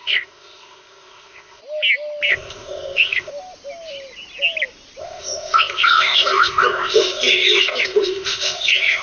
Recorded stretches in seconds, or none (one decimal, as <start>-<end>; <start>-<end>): 1.6-2.3; 3.3-5.0